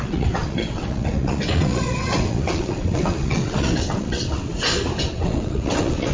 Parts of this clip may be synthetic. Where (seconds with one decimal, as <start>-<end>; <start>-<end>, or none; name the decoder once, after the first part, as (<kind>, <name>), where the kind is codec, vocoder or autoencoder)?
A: 0.0-4.5 (vocoder, WaveNeXt); 5.1-6.1